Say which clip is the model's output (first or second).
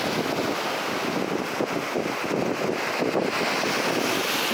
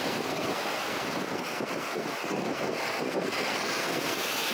second